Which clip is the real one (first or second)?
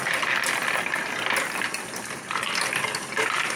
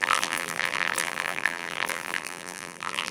first